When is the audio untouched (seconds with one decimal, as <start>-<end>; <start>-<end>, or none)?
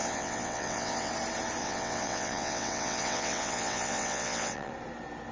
1.1-1.6; 4.7-5.3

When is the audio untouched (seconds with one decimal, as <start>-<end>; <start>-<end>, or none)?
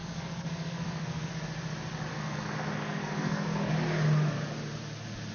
1.3-2.1; 3.7-5.3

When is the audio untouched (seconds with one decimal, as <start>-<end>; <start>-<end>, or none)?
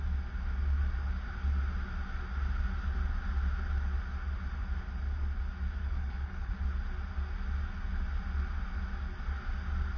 0.0-5.8; 6.5-10.0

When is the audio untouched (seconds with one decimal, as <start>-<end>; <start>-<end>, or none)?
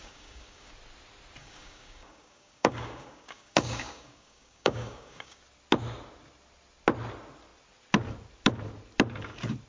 0.7-1.4; 5.4-9.7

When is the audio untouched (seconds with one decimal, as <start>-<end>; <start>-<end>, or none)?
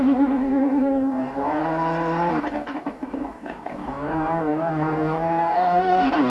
1.6-2.3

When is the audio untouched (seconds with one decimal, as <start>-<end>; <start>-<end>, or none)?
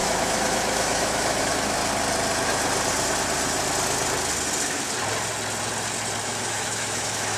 1.8-6.2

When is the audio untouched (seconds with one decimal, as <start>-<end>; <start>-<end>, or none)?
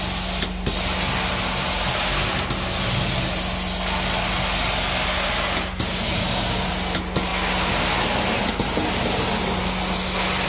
0.0-10.5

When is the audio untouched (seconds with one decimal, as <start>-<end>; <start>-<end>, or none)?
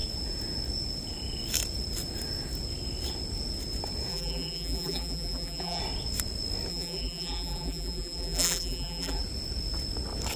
0.0-4.1; 5.8-6.7; 9.2-10.4